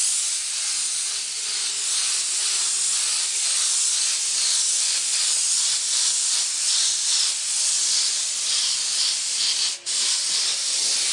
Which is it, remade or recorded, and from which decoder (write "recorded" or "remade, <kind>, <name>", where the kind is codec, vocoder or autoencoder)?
recorded